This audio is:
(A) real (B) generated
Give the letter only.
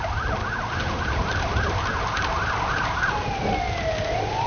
A